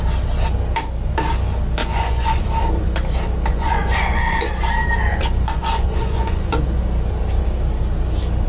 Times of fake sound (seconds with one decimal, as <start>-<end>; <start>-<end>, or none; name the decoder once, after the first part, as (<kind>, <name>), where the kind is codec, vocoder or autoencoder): 1.8-2.4 (vocoder, Vocos); 3.5-4.5; 5.1-6.8